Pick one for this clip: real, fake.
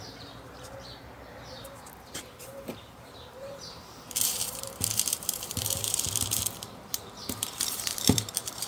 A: fake